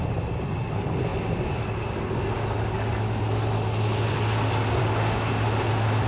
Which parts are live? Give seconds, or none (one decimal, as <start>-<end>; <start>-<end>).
0.0-6.1